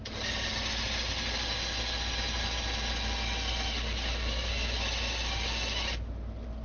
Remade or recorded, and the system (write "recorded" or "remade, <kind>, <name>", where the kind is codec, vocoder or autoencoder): recorded